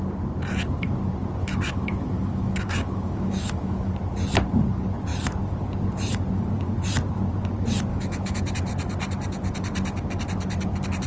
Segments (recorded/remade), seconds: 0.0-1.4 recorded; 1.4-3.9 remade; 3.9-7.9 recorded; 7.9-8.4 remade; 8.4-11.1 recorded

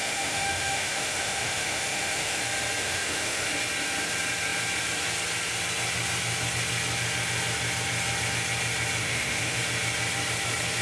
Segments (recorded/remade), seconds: 0.0-2.4 remade; 2.4-2.8 recorded; 2.8-3.5 remade; 3.5-9.0 recorded; 9.0-9.6 remade; 9.6-10.8 recorded

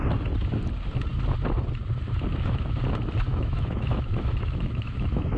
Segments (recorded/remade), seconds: 0.0-3.3 recorded; 3.3-5.4 remade

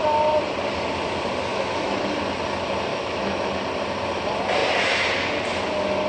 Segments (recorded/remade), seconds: 0.0-1.5 recorded; 1.5-2.1 remade; 2.1-2.9 recorded; 2.9-3.5 remade; 3.5-6.1 recorded

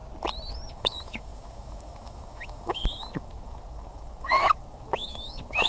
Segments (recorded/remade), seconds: 0.0-0.7 recorded; 0.7-5.7 remade